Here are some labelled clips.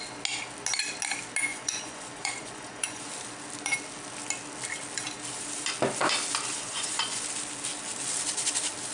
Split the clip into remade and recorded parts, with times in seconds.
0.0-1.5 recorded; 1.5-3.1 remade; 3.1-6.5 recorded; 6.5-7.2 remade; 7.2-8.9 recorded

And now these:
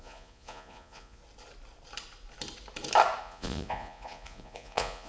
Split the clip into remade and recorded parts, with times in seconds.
0.0-1.2 remade; 1.2-3.2 recorded; 3.2-5.1 remade

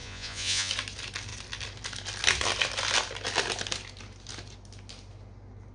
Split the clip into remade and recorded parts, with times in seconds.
0.0-0.7 remade; 0.7-5.7 recorded

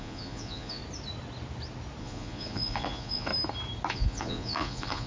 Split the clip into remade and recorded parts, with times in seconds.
0.0-0.8 remade; 0.8-2.0 recorded; 2.0-3.3 remade; 3.3-3.9 recorded; 3.9-5.1 remade

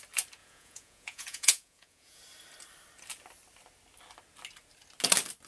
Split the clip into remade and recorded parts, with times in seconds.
0.0-0.4 recorded; 0.4-2.2 remade; 2.2-5.5 recorded

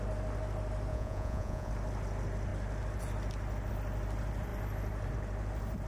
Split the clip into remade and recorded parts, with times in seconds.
0.0-0.9 recorded; 0.9-1.7 remade; 1.7-5.9 recorded

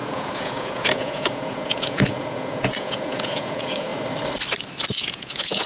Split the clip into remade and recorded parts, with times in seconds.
0.0-3.9 remade; 3.9-5.0 recorded; 5.0-5.7 remade